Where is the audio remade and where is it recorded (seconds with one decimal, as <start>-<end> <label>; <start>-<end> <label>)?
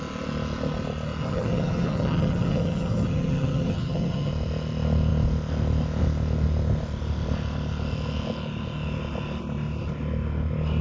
0.0-1.2 recorded; 1.2-4.3 remade; 4.3-10.8 recorded